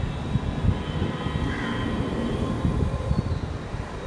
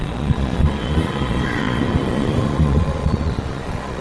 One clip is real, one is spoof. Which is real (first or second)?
first